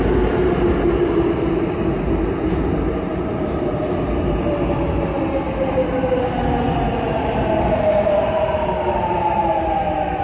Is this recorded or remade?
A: recorded